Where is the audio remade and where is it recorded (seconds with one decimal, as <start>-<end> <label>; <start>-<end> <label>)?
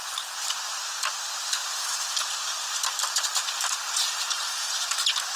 0.0-1.6 recorded; 1.6-4.8 remade; 4.8-5.4 recorded